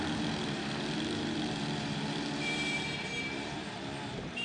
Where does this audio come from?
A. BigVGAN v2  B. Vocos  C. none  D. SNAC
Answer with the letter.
A